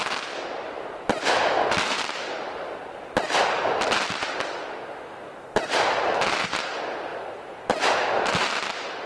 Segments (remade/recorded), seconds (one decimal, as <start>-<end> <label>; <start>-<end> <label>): 0.0-9.1 recorded

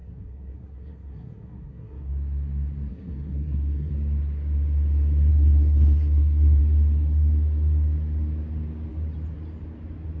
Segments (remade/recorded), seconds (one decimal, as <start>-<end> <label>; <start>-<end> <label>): 0.0-2.1 remade; 2.1-2.9 recorded; 2.9-3.9 remade; 3.9-5.3 recorded; 5.3-6.6 remade; 6.6-10.2 recorded

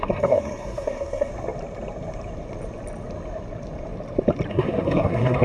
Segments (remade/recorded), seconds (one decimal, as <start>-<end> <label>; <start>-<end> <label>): 0.0-1.3 remade; 1.3-4.5 recorded; 4.5-5.4 remade